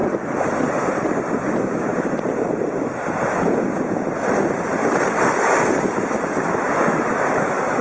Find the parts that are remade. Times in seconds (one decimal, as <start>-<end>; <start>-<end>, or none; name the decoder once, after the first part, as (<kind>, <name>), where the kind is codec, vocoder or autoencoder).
1.4-1.9 (autoencoder, DAC-VAE); 6.5-7.8